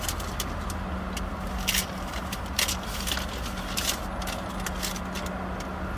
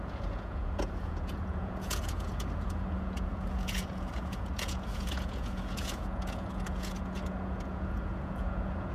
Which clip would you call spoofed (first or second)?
second